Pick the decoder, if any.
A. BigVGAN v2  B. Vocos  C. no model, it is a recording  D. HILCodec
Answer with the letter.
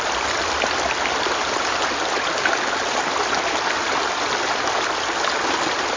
C